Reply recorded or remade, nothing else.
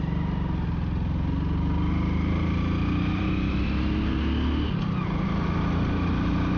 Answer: recorded